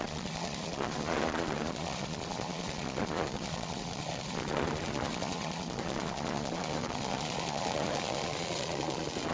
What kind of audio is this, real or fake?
fake